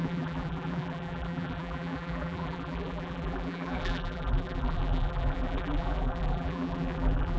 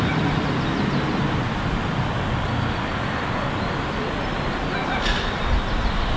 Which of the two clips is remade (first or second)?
first